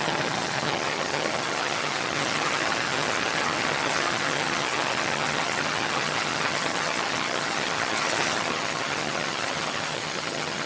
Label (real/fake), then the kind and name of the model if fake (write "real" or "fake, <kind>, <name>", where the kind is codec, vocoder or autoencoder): fake, vocoder, HiFi-GAN